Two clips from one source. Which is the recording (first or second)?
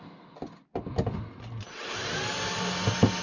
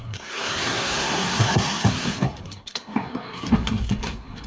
first